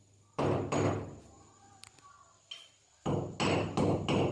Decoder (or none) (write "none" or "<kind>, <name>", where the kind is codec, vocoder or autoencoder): none